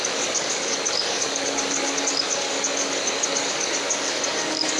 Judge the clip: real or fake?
fake